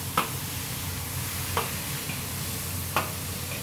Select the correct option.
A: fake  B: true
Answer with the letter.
B